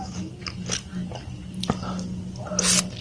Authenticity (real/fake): real